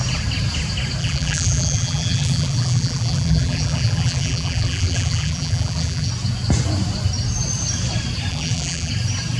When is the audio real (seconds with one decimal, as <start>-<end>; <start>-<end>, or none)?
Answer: 0.0-1.0; 6.1-8.3; 8.9-9.4